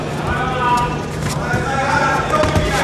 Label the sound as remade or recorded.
remade